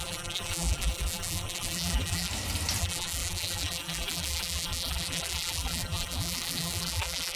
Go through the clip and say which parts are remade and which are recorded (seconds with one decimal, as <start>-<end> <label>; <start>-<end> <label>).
0.0-2.3 remade; 2.3-2.8 recorded; 2.8-7.4 remade